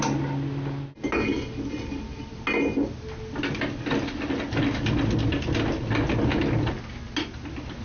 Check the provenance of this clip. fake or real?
real